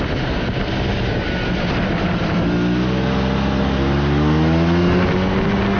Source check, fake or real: real